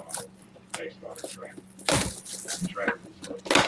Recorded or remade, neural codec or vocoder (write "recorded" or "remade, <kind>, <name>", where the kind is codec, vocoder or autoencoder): recorded